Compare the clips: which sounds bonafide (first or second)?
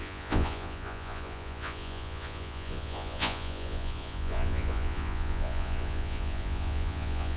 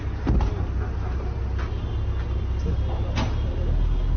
second